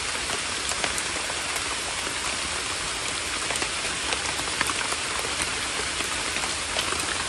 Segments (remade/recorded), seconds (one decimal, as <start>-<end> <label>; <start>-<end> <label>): 0.0-7.3 recorded